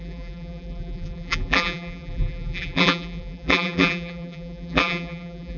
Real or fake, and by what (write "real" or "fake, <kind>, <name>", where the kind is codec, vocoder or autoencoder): fake, vocoder, BigVGAN v2